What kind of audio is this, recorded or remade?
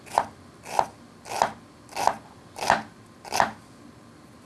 recorded